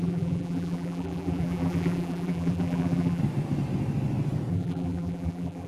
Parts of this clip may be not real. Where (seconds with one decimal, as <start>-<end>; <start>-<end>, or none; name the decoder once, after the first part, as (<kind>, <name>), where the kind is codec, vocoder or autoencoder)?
0.0-3.2 (vocoder, BigVGAN v2); 4.5-5.7